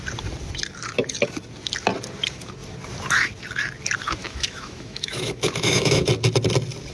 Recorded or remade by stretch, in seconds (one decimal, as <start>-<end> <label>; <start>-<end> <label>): 0.0-4.2 recorded; 4.2-6.1 remade; 6.1-6.9 recorded